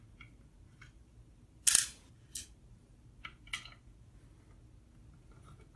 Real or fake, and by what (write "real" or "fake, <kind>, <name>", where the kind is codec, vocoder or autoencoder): real